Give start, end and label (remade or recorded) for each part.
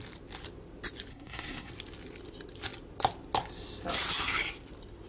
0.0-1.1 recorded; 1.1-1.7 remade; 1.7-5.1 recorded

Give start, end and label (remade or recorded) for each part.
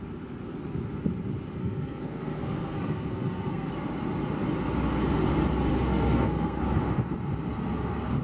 0.0-1.6 recorded; 1.6-3.7 remade; 3.7-5.7 recorded; 5.7-6.6 remade; 6.6-8.2 recorded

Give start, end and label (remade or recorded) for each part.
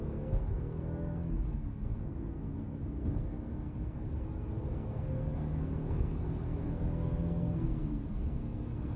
0.0-9.0 remade